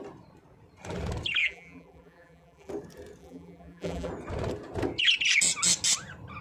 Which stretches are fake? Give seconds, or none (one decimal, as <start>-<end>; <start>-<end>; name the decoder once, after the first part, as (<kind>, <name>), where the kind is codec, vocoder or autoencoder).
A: 1.4-2.7 (vocoder, BigVGAN v2); 3.2-4.1